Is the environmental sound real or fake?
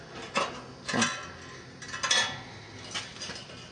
real